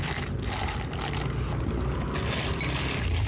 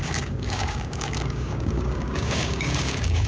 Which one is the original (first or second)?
first